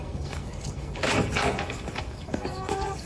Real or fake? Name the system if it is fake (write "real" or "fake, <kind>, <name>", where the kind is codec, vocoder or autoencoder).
fake, codec, SNAC